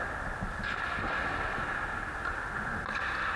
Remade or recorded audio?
recorded